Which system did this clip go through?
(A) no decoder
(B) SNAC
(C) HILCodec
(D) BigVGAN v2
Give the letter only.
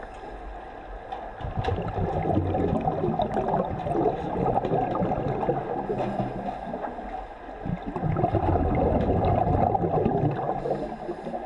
A